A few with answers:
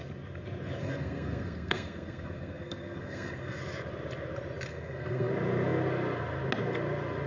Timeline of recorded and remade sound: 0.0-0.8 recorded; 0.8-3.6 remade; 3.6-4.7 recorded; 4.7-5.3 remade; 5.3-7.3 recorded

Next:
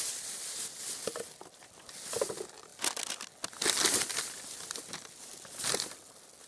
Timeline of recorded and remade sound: 0.0-6.5 recorded

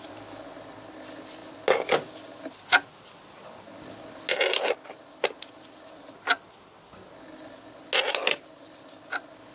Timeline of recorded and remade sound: 0.0-9.5 recorded

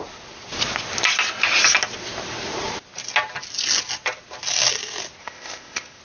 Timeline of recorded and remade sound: 0.0-5.2 recorded; 5.2-6.0 remade

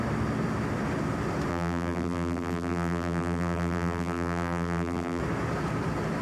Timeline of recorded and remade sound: 0.0-1.5 recorded; 1.5-5.2 remade; 5.2-6.2 recorded

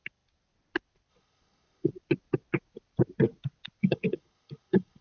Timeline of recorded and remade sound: 0.0-1.1 recorded; 1.1-1.9 remade; 1.9-3.8 recorded; 3.8-5.0 remade

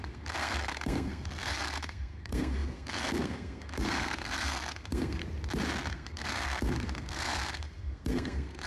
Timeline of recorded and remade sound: 0.0-5.2 remade; 5.2-5.9 recorded; 5.9-8.7 remade

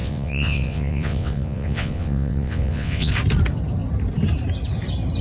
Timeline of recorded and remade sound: 0.0-3.1 remade; 3.1-5.2 recorded